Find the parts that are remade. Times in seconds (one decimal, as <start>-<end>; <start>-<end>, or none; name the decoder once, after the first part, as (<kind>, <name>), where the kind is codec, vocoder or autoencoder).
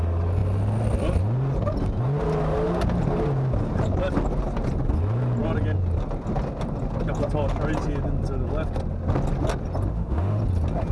9.9-10.4 (autoencoder, DAC-VAE)